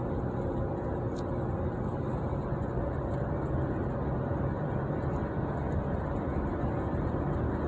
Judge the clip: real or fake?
real